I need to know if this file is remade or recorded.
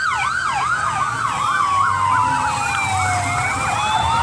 recorded